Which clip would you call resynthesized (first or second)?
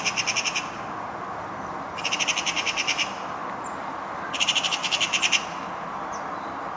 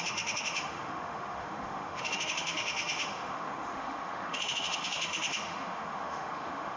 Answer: second